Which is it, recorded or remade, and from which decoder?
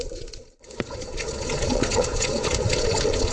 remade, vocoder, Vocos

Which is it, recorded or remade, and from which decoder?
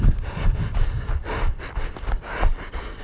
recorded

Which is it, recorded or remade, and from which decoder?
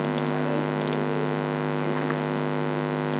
recorded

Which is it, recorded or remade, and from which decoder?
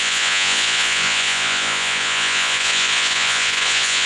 remade, vocoder, Vocos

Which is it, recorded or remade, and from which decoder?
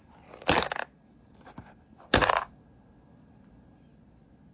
recorded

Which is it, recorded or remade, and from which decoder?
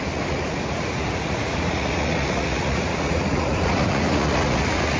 remade, vocoder, Vocos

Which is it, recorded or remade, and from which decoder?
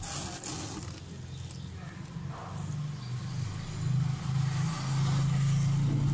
recorded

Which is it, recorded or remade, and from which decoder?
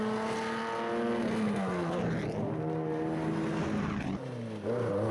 recorded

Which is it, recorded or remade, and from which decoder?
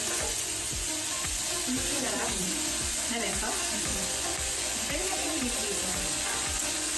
remade, vocoder, Vocos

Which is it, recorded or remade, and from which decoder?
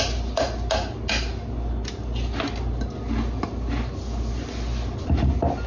recorded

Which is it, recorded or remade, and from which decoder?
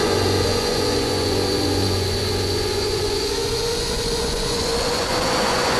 remade, vocoder, Vocos